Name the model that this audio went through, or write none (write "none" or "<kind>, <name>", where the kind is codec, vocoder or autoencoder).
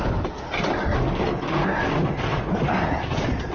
none